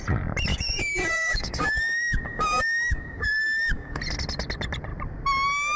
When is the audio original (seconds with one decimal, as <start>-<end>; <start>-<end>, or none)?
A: 0.0-0.5; 4.0-5.8